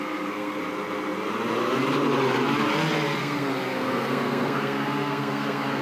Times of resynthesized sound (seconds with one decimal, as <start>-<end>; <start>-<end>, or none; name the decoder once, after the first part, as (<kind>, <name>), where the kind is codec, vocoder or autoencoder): 0.0-0.6 (codec, SNAC); 3.2-5.8